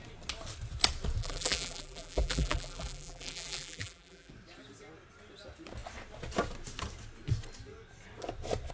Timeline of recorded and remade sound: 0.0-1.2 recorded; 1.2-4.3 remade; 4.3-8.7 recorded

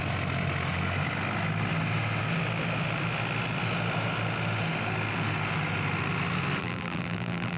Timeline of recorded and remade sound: 0.0-6.6 recorded; 6.6-7.6 remade

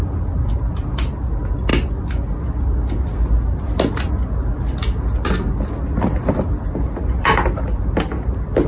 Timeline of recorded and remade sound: 0.0-8.7 recorded

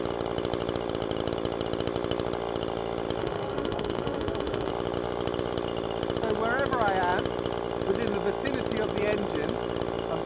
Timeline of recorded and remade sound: 0.0-3.2 recorded; 3.2-4.7 remade; 4.7-10.3 recorded

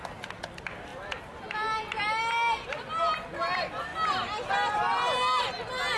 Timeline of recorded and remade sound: 0.0-6.0 recorded